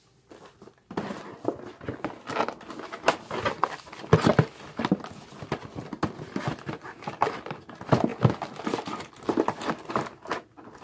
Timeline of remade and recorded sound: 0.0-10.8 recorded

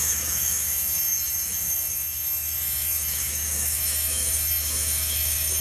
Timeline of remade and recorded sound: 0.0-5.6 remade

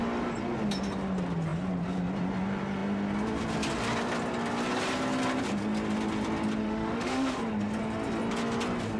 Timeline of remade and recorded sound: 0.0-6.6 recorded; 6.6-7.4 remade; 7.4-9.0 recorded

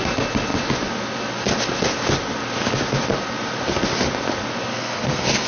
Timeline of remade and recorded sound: 0.0-4.7 recorded; 4.7-5.5 remade

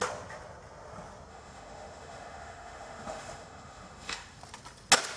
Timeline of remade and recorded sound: 0.0-1.3 recorded; 1.3-4.4 remade; 4.4-5.2 recorded